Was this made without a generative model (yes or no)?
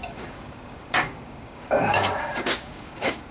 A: no